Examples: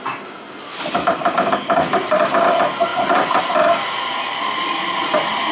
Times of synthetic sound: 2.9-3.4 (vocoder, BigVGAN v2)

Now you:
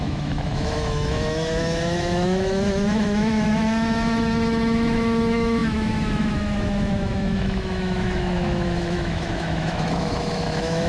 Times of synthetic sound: 0.0-10.9 (autoencoder, DAC-VAE)

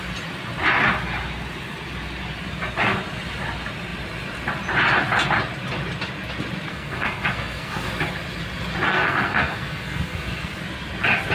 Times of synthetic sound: 6.7-7.9 (codec, SNAC); 8.9-10.6

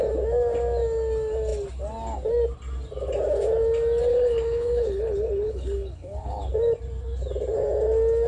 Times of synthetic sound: 4.1-6.4 (codec, HILCodec)

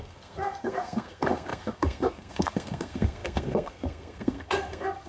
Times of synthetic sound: 0.0-5.1 (codec, SNAC)